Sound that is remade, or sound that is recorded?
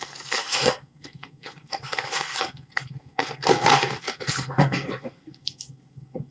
remade